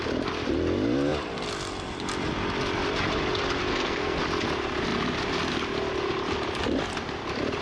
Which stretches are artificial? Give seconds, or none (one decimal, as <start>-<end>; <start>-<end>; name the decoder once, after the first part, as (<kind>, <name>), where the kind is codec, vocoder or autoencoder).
3.7-4.2 (codec, SNAC)